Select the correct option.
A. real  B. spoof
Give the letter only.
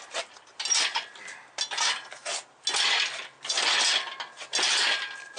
A